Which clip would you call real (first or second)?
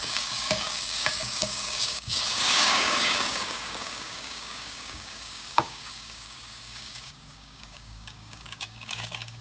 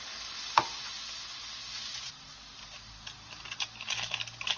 second